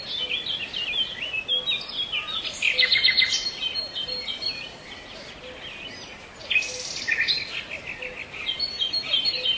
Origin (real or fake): real